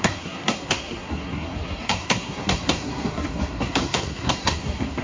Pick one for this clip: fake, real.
fake